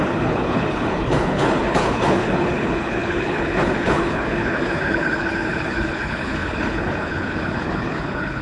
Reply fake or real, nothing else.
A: fake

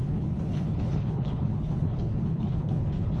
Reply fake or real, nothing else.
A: fake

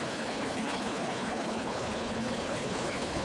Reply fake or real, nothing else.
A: fake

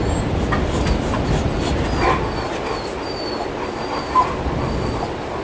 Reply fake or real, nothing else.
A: real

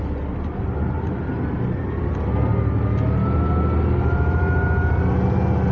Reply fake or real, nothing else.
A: real